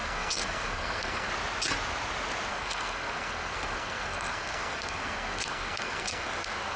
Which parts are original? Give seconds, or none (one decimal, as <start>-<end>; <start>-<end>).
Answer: 1.3-2.5